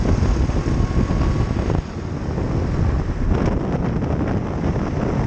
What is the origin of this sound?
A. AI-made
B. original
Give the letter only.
B